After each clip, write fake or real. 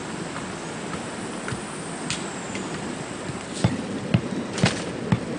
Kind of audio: real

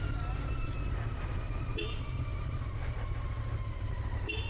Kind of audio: fake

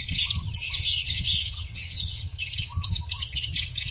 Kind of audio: fake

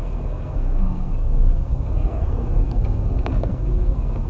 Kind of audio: fake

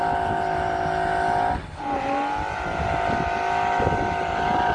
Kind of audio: real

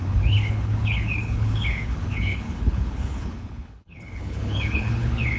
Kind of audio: fake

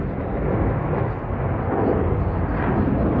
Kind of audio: real